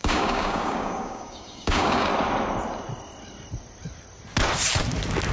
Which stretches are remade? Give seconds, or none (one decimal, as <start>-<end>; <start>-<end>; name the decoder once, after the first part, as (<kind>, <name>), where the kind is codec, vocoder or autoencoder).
0.0-2.1 (codec, DAC)